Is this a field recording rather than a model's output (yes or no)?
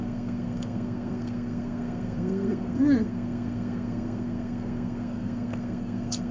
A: no